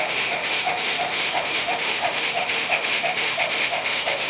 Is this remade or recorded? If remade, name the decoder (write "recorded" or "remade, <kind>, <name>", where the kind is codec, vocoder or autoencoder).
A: remade, autoencoder, DAC-VAE